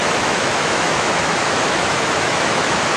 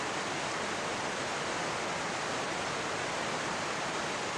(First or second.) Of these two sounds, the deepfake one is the first